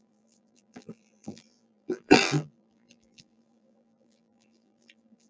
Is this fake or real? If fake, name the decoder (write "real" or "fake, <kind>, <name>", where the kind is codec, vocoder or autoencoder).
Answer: fake, vocoder, BigVGAN v2